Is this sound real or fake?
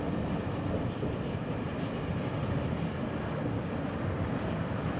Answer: fake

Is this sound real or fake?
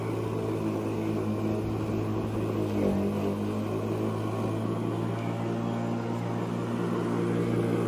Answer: real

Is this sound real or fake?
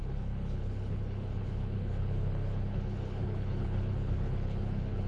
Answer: fake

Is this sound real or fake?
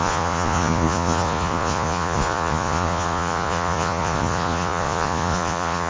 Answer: fake